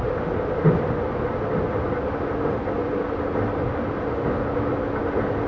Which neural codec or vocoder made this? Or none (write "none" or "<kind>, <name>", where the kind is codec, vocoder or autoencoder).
none